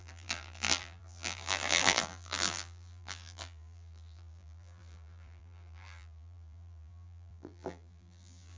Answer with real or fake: fake